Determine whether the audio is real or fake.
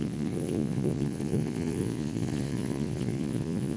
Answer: fake